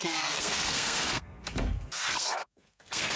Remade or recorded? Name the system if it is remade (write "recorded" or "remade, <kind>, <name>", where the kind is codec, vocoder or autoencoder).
remade, codec, SNAC